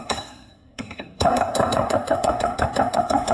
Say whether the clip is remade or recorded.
remade